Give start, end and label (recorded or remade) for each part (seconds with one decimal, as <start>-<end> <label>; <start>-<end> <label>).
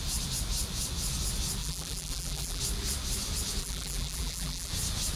0.0-1.6 recorded; 1.6-2.6 remade; 2.6-3.6 recorded; 3.6-4.7 remade; 4.7-5.2 recorded